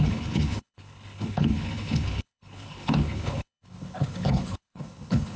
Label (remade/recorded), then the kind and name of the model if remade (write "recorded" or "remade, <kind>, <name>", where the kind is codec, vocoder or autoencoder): remade, codec, HILCodec